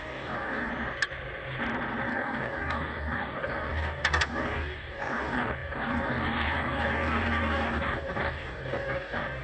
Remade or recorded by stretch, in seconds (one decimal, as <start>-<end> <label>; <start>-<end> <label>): 0.0-0.7 remade; 0.7-2.1 recorded; 2.1-9.4 remade